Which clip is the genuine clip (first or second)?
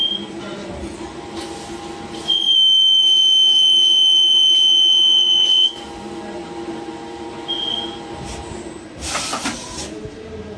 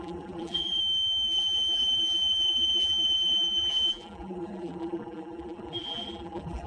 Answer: first